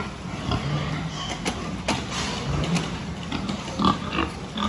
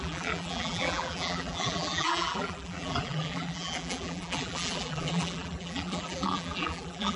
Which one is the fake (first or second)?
second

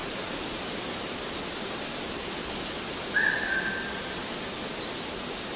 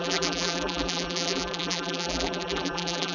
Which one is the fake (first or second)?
second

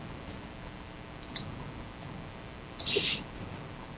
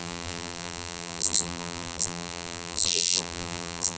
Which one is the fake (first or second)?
second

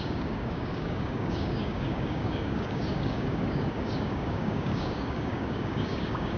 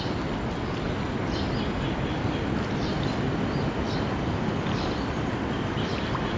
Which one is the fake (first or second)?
first